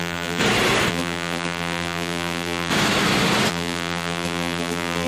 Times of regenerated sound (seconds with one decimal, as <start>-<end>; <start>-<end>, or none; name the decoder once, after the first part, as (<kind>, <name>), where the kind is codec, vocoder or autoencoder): 0.0-0.4 (vocoder, BigVGAN v2); 0.9-2.7; 3.5-5.1